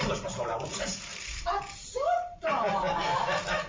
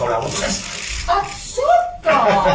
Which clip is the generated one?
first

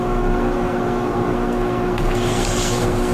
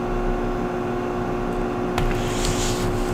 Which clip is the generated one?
first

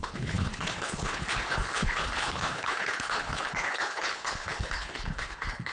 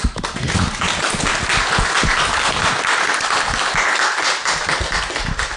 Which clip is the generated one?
first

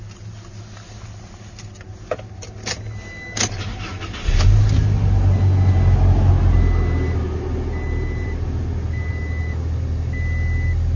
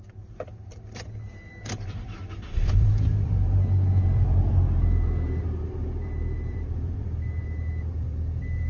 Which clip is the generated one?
second